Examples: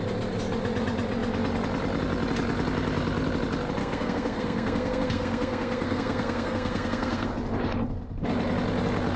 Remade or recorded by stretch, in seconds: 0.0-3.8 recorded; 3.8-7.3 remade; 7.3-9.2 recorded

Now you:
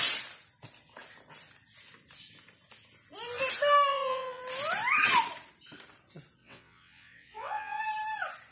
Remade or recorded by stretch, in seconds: 0.0-3.9 recorded; 3.9-4.4 remade; 4.4-6.4 recorded; 6.4-7.8 remade; 7.8-8.5 recorded

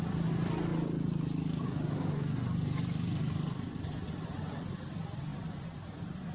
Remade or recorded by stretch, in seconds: 0.0-0.7 remade; 0.7-4.2 recorded; 4.2-5.3 remade; 5.3-6.3 recorded

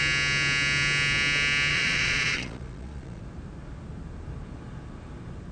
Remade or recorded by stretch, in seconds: 0.0-1.7 recorded; 1.7-3.2 remade; 3.2-5.5 recorded

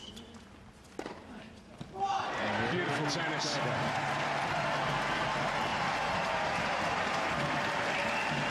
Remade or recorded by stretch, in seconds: 0.0-5.7 recorded; 5.7-7.3 remade; 7.3-8.5 recorded

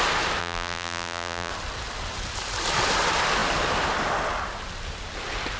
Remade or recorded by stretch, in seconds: 0.0-0.4 recorded; 0.4-1.5 remade; 1.5-5.6 recorded

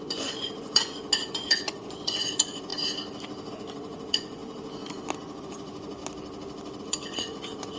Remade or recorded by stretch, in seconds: 0.0-2.7 remade; 2.7-3.5 recorded; 3.5-4.4 remade; 4.4-5.4 recorded; 5.4-6.0 remade; 6.0-6.8 recorded; 6.8-7.8 remade

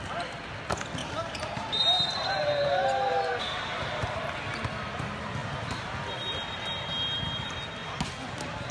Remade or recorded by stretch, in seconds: 0.0-1.0 recorded; 1.0-4.1 remade; 4.1-8.7 recorded